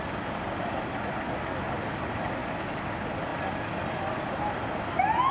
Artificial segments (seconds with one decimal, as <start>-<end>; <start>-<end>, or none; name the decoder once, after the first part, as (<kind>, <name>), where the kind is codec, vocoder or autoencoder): none